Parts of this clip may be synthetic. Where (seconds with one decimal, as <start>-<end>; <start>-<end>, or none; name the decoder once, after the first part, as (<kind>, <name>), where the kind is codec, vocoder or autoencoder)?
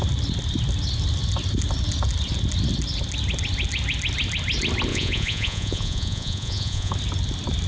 4.9-6.9 (vocoder, Vocos)